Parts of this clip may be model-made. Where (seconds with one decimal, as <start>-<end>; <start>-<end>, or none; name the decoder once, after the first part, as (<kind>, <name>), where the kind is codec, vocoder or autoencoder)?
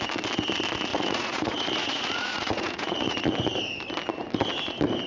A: 0.9-3.2 (vocoder, Vocos)